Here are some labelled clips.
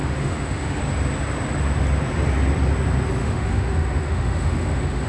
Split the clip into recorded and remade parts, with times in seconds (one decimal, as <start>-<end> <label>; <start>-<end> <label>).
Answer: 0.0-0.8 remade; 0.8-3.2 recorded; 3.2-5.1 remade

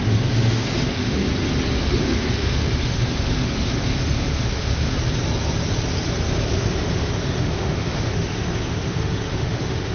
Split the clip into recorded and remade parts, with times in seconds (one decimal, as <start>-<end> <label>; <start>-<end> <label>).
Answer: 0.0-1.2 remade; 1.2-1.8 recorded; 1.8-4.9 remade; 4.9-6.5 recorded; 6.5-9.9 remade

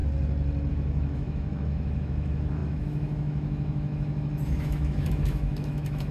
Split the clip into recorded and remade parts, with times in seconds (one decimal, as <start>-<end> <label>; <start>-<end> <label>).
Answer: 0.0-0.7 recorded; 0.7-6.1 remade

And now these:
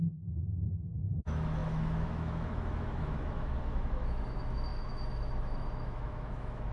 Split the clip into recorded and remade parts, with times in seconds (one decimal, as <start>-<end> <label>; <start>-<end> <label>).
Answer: 0.0-6.7 remade

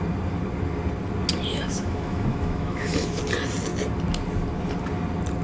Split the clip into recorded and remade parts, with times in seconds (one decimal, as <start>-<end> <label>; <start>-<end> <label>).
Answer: 0.0-1.5 recorded; 1.5-3.2 remade; 3.2-5.4 recorded

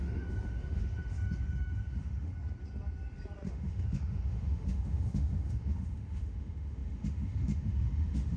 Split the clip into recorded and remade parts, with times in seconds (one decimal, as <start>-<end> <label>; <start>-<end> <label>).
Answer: 0.0-2.3 remade; 2.3-3.5 recorded; 3.5-8.4 remade

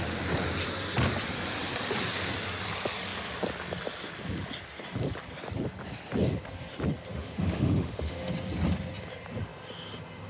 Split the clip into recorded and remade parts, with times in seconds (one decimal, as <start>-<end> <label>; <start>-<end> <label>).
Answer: 0.0-7.1 recorded; 7.1-8.3 remade; 8.3-10.3 recorded